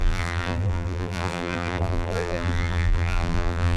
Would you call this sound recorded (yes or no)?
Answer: no